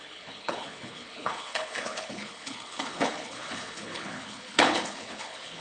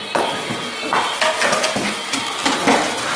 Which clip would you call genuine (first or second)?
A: second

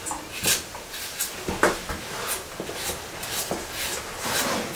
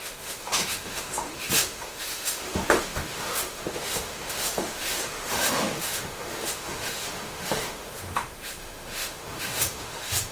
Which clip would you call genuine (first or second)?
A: first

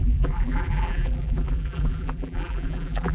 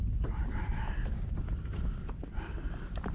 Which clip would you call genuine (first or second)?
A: second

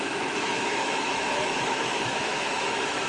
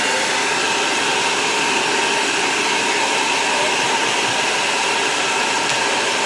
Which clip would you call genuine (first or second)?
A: second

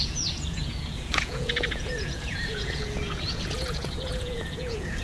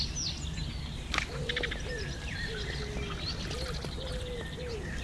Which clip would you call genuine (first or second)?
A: second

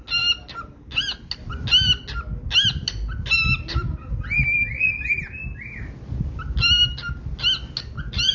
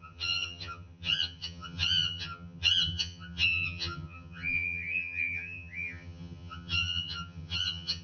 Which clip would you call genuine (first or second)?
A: first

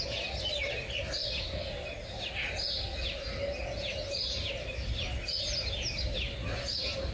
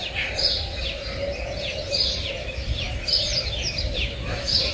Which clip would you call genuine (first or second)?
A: first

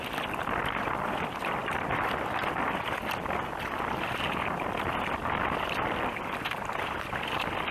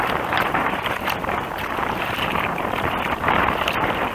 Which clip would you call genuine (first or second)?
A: first